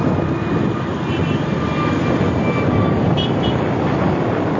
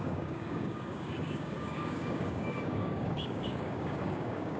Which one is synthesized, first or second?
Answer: second